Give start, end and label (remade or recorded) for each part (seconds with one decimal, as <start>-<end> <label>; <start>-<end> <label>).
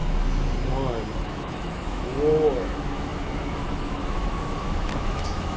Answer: 0.0-1.2 recorded; 1.2-5.6 remade